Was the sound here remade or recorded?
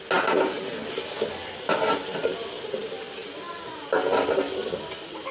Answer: recorded